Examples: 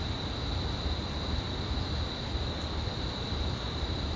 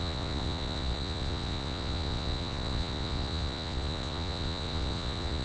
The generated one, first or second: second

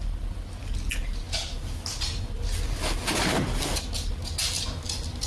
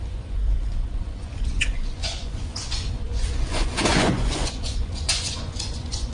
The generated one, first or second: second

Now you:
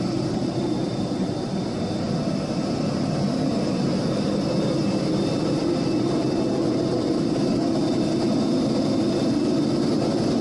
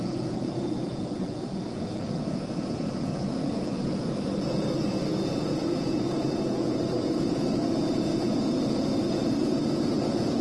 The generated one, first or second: second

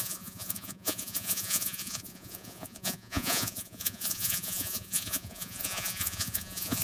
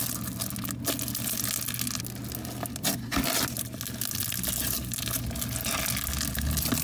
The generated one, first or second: first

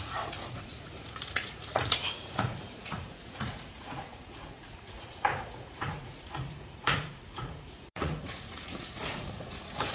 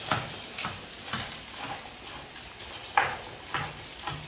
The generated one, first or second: first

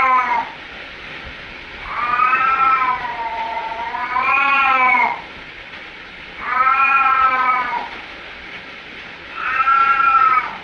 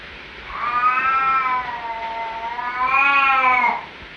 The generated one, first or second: first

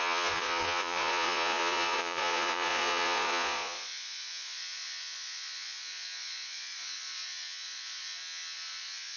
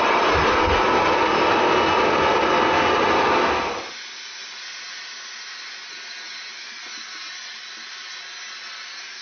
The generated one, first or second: first